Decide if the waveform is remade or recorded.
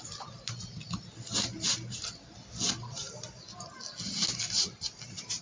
recorded